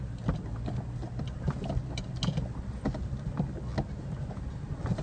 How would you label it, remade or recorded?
recorded